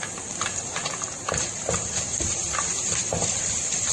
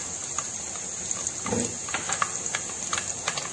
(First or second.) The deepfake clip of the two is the first